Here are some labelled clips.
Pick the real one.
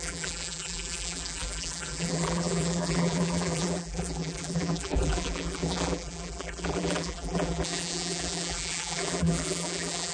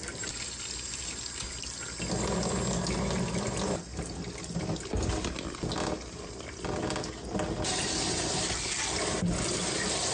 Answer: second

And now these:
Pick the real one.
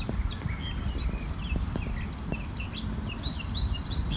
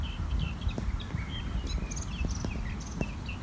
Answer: second